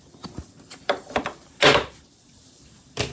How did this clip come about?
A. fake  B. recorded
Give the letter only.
B